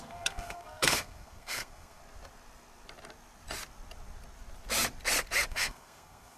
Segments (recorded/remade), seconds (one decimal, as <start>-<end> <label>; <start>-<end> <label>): 0.0-2.0 remade; 2.0-5.5 recorded; 5.5-6.4 remade